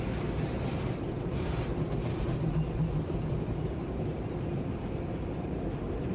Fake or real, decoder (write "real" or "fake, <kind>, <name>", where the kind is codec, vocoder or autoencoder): real